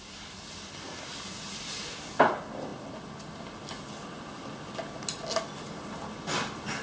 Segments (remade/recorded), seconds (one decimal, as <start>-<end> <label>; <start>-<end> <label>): 0.0-6.8 recorded